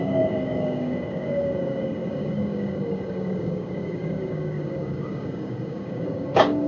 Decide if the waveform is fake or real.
fake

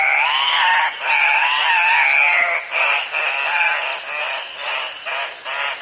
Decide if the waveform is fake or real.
real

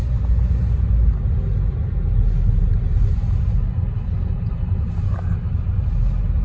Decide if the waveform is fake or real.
real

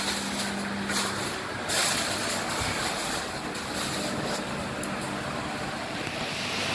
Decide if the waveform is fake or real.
real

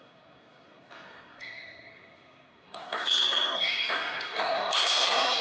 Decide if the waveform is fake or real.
fake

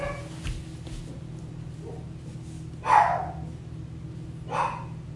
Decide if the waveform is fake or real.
real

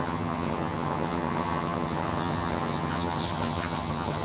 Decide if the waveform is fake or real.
fake